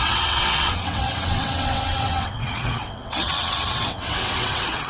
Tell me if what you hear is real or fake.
fake